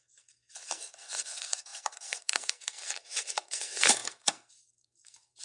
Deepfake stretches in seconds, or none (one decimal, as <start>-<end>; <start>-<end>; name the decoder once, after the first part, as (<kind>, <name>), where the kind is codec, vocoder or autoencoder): 0.0-5.4 (codec, SNAC)